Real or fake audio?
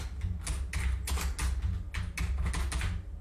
real